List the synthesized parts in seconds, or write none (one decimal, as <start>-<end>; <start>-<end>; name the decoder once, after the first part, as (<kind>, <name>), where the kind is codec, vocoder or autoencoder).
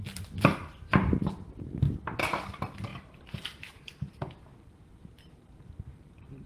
2.9-6.5 (vocoder, BigVGAN v2)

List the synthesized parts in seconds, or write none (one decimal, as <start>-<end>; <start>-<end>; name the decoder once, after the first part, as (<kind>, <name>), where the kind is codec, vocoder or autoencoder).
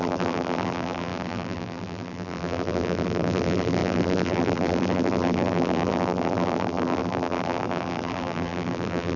0.0-9.2 (vocoder, BigVGAN v2)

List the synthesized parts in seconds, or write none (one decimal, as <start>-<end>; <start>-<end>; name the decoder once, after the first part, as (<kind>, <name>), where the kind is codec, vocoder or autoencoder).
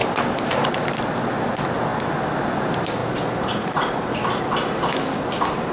0.0-1.2 (vocoder, BigVGAN v2); 3.0-4.4